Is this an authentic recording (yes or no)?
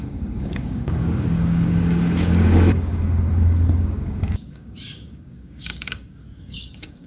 no